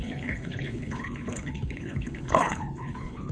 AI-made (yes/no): yes